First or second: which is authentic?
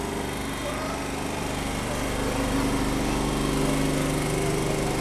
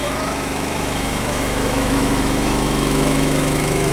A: first